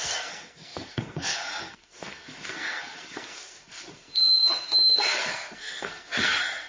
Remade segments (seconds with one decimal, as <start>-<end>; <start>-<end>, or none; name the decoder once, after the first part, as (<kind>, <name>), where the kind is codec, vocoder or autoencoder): 0.0-6.7 (codec, SNAC)